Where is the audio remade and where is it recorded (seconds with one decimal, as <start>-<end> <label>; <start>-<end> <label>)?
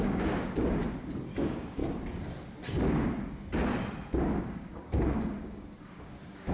0.0-0.8 remade; 0.8-1.4 recorded; 1.4-1.8 remade; 1.8-4.4 recorded; 4.4-6.5 remade